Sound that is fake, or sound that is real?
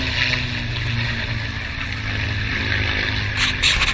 real